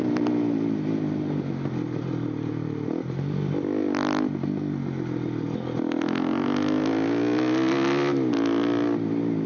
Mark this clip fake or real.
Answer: real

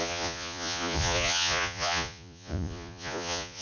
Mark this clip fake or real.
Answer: fake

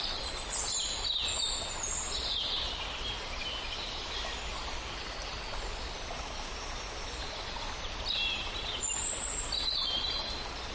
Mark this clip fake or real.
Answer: real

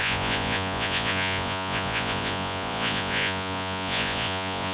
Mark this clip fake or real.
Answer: fake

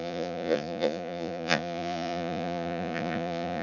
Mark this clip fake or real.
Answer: fake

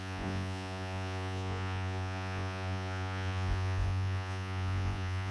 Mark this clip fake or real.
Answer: fake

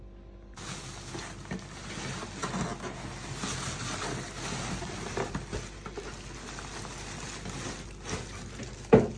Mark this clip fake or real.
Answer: real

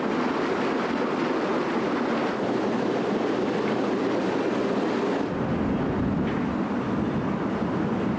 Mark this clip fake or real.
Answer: real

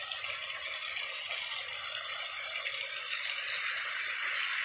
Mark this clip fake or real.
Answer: real